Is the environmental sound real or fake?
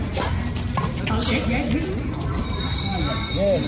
real